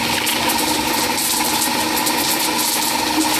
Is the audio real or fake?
real